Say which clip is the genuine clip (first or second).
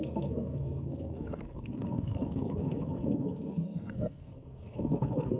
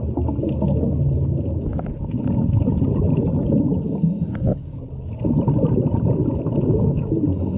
second